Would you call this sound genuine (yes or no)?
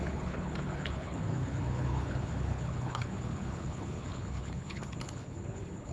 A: no